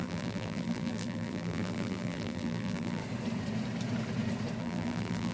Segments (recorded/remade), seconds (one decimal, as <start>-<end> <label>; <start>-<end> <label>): 0.0-3.0 remade; 3.0-4.6 recorded; 4.6-5.3 remade